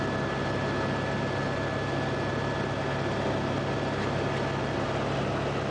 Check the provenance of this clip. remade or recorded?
recorded